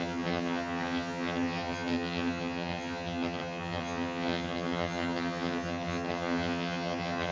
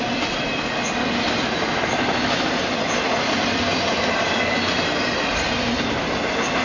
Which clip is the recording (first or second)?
second